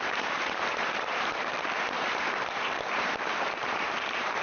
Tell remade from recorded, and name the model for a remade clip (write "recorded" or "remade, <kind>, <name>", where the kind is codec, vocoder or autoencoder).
remade, vocoder, BigVGAN v2